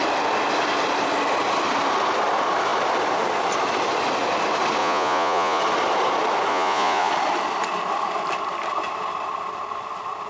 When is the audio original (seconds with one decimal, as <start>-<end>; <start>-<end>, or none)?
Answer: 0.0-4.8; 5.6-6.5; 7.1-10.3